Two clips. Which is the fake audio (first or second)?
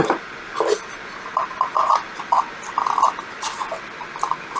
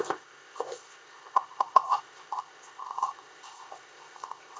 second